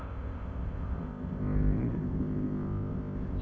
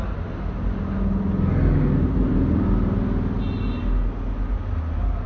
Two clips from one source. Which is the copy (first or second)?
first